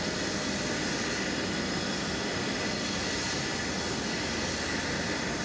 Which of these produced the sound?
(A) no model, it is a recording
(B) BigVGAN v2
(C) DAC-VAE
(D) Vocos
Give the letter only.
A